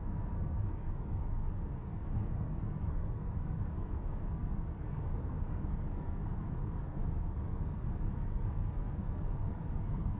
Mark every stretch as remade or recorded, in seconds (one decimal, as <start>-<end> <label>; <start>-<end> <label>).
0.0-10.2 remade